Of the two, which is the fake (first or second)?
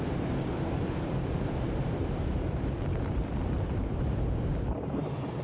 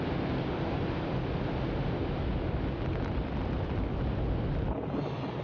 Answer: first